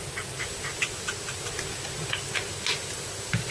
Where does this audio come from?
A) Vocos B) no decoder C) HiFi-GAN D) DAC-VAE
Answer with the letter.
B